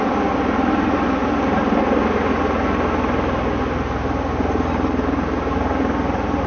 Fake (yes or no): no